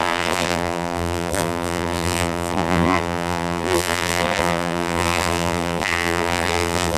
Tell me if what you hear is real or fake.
fake